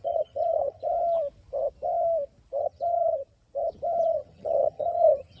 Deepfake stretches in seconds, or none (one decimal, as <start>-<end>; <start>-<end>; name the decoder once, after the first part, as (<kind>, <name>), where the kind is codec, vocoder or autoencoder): 0.0-0.9 (vocoder, HiFi-GAN); 2.6-3.2; 4.0-5.4